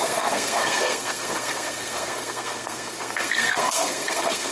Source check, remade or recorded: remade